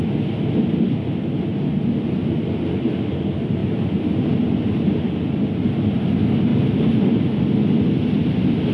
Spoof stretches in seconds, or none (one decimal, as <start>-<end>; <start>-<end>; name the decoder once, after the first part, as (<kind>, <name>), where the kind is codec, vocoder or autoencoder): 3.6-5.7 (vocoder, BigVGAN v2); 6.5-7.5